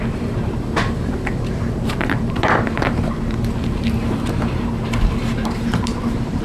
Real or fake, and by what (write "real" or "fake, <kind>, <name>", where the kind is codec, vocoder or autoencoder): fake, vocoder, BigVGAN v2